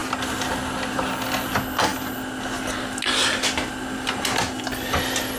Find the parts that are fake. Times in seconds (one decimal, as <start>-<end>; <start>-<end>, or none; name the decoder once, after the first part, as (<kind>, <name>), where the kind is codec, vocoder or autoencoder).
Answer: none